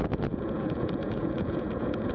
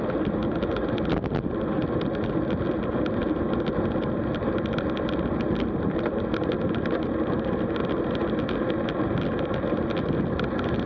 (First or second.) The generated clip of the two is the first